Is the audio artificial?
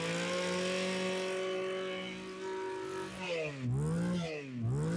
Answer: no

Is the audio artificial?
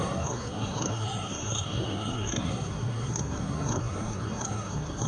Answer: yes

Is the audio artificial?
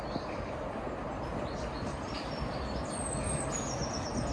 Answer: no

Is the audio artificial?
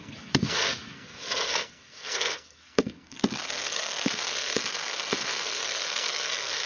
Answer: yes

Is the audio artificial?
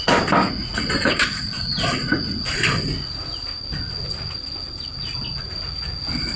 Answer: no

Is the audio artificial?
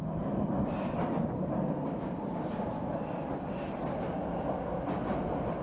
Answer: no